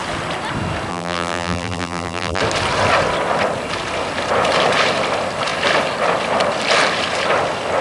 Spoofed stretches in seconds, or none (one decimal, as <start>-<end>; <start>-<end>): 0.9-2.4

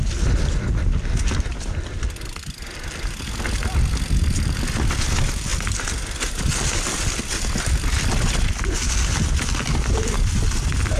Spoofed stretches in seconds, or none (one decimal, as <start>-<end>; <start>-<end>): 1.5-3.9

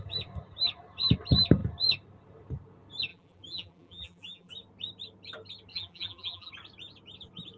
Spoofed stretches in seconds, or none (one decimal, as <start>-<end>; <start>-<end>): 3.1-4.5; 5.7-6.5

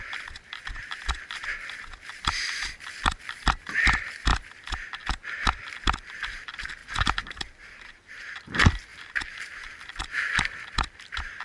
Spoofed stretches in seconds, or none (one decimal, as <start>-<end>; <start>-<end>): 0.0-4.3; 5.1-6.8; 7.9-8.9; 9.4-11.4

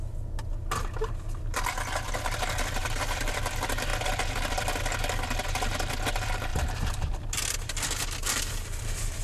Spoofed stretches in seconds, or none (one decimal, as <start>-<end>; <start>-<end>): 2.8-3.4; 6.5-7.1

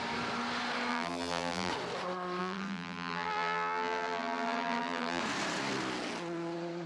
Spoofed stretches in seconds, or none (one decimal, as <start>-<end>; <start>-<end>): 0.9-1.7; 2.4-5.2

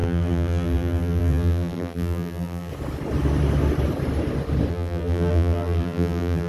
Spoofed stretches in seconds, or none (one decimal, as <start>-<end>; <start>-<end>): 0.0-2.7; 4.7-6.5